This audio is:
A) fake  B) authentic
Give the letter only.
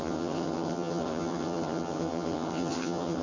A